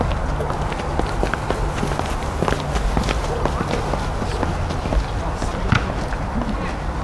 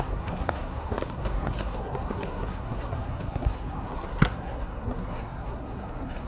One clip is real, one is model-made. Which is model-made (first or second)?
second